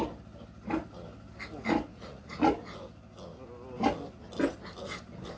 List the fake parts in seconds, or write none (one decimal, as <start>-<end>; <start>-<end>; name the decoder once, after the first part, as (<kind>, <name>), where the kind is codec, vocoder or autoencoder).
1.9-2.5 (vocoder, Vocos)